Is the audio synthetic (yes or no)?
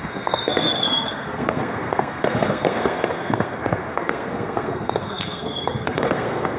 yes